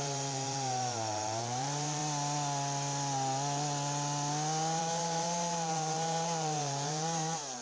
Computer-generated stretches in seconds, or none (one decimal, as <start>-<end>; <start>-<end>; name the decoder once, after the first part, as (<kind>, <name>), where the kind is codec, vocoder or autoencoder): 0.0-2.0 (vocoder, BigVGAN v2); 4.8-7.6